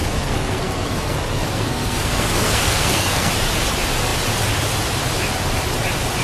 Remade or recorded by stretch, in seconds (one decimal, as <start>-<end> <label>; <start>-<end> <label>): 0.0-3.3 remade; 3.3-6.2 recorded